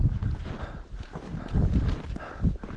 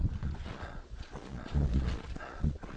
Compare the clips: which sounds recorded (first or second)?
first